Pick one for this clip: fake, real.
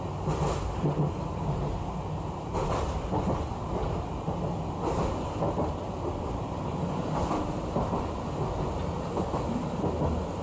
real